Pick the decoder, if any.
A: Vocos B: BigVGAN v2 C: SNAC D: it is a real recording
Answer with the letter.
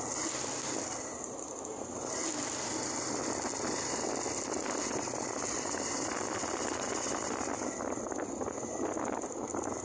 D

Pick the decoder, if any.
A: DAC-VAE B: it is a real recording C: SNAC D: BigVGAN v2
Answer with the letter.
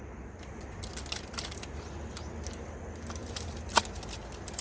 B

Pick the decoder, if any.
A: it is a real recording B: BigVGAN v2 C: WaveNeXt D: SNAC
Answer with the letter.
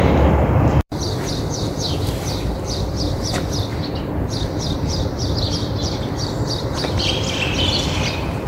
B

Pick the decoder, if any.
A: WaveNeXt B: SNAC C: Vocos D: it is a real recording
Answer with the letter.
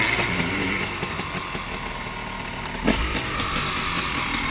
D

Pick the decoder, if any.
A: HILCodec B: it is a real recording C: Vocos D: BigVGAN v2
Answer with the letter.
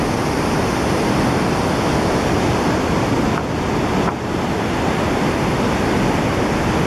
B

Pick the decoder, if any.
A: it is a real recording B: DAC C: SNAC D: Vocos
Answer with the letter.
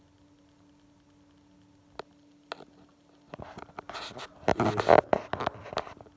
A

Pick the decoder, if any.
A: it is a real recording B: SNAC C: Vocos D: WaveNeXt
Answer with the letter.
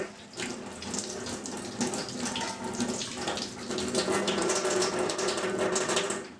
A